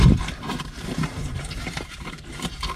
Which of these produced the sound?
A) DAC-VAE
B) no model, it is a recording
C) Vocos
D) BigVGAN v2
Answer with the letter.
D